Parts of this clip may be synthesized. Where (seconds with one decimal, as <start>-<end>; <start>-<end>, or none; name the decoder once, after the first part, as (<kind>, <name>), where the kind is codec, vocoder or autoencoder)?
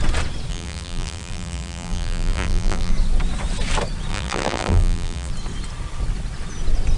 0.5-2.9 (vocoder, BigVGAN v2); 4.1-5.3